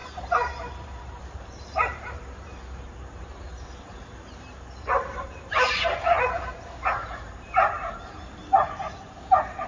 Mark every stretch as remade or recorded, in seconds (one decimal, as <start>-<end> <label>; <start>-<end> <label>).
0.0-9.7 remade